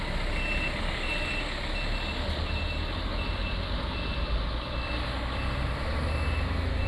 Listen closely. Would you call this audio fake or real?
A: real